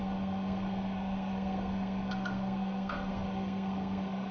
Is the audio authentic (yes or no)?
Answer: no